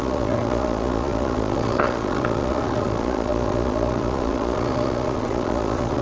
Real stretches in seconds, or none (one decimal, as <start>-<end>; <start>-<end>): none